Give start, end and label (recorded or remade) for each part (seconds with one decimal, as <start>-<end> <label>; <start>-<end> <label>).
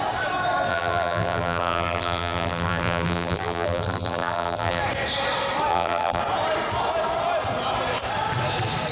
0.0-0.7 recorded; 0.7-4.8 remade; 4.8-5.7 recorded; 5.7-6.2 remade; 6.2-8.9 recorded